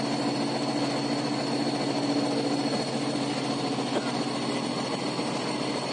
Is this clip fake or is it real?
real